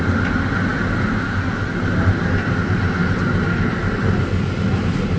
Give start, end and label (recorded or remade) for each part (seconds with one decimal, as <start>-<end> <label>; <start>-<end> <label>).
0.0-5.2 recorded